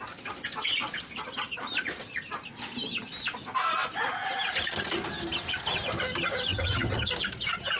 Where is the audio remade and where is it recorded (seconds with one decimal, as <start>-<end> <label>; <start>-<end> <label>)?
0.0-6.5 recorded; 6.5-7.1 remade; 7.1-7.8 recorded